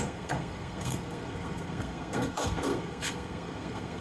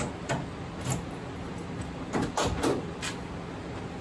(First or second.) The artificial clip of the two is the first